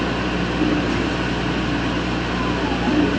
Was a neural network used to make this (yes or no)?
no